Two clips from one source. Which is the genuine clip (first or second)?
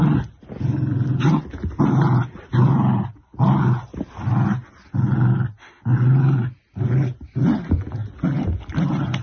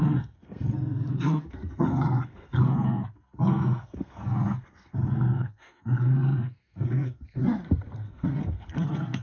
first